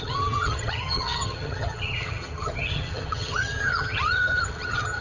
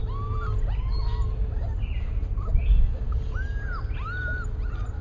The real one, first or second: second